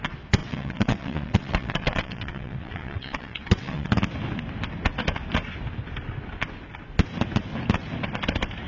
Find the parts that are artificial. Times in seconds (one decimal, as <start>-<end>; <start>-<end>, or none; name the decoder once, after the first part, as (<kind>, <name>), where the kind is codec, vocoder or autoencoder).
0.4-3.9 (vocoder, WaveNeXt)